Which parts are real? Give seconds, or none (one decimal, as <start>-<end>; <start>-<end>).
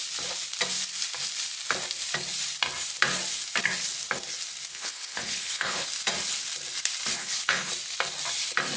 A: 0.0-4.7; 5.9-7.2; 7.7-8.8